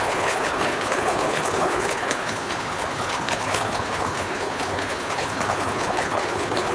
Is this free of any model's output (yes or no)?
no